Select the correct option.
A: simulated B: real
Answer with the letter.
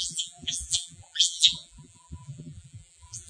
A